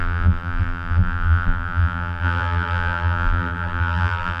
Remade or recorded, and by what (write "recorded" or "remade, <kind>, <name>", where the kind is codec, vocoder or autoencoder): remade, vocoder, BigVGAN v2